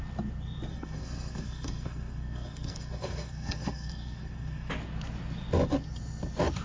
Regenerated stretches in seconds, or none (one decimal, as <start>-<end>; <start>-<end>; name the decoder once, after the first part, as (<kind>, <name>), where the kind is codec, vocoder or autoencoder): 0.7-4.7 (codec, SNAC)